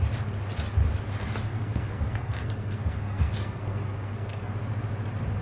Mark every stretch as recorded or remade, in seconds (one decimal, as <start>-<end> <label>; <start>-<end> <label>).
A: 0.0-1.5 recorded; 1.5-4.5 remade; 4.5-5.4 recorded